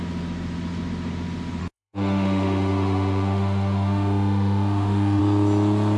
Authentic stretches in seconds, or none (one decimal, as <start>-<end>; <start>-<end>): 0.0-1.6; 5.2-6.0